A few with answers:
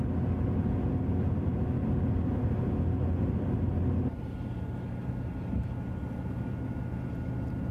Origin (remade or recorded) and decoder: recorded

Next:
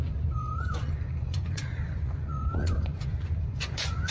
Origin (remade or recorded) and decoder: remade, vocoder, Vocos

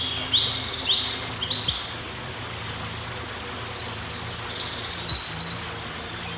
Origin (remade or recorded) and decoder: recorded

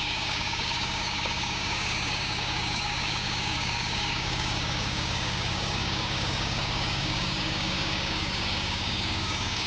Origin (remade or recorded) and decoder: remade, codec, DAC